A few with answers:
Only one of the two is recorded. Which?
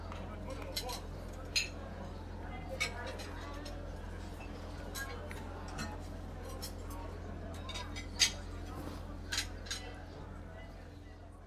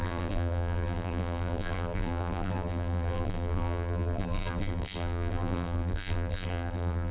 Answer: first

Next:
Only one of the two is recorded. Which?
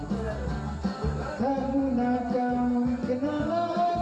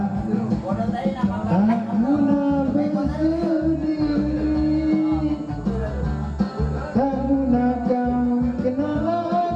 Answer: second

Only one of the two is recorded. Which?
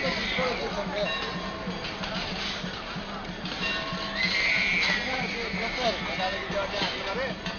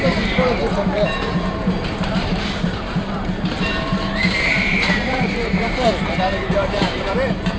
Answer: first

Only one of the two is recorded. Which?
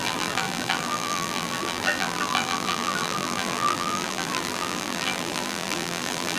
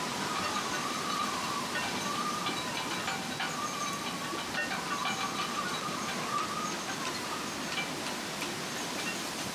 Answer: second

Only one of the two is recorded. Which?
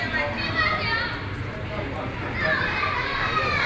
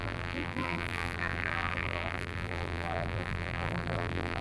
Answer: first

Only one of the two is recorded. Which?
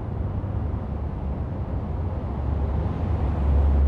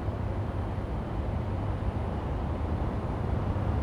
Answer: first